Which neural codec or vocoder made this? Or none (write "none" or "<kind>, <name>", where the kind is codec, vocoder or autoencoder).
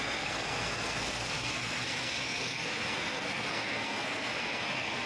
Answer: codec, SNAC